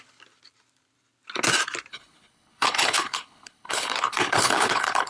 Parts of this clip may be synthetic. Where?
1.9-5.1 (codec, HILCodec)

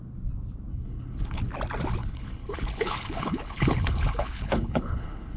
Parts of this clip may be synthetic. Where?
0.7-1.4 (codec, HILCodec); 2.0-5.4

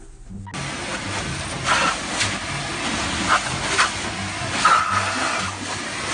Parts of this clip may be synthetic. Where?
none